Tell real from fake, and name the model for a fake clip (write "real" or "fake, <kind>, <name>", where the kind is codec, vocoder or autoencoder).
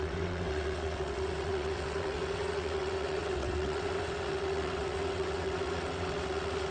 fake, vocoder, WaveNeXt